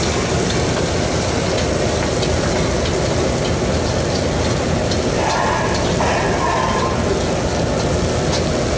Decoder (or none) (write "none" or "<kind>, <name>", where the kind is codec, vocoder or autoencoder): none